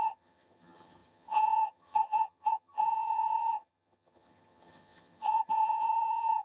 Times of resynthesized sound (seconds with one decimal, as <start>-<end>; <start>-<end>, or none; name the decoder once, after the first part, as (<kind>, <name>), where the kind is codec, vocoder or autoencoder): 0.0-6.4 (vocoder, HiFi-GAN)

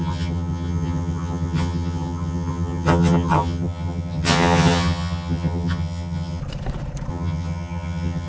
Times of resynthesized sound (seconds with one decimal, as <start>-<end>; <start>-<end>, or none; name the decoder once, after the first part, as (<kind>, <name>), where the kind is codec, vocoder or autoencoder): 0.0-6.4 (vocoder, HiFi-GAN); 7.1-8.3

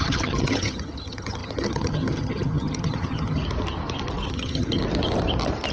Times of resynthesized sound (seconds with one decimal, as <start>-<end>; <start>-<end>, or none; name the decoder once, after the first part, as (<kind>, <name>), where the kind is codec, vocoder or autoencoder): 0.0-3.4 (vocoder, HiFi-GAN); 4.3-4.8

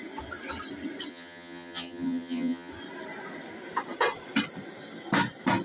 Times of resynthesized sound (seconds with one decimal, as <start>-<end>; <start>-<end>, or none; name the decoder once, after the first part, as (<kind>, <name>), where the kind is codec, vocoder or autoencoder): 1.1-2.7 (vocoder, HiFi-GAN)

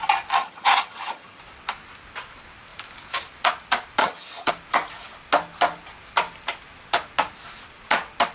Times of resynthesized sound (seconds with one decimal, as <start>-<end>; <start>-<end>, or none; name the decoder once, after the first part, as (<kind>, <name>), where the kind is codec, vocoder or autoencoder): 0.4-1.4 (vocoder, HiFi-GAN); 4.0-4.5

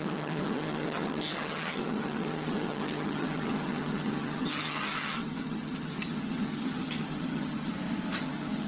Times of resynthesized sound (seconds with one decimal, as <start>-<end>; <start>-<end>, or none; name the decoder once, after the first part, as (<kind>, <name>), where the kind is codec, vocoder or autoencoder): 0.0-7.7 (vocoder, HiFi-GAN); 8.2-8.7

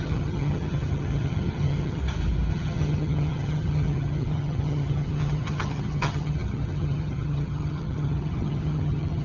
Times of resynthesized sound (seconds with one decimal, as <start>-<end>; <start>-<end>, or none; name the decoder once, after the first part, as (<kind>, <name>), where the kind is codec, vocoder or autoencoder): 0.0-2.0 (vocoder, HiFi-GAN); 2.5-9.2